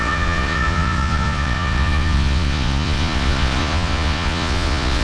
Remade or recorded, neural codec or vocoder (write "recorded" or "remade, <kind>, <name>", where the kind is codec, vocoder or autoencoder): remade, vocoder, Vocos